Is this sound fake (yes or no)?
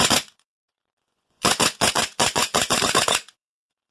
yes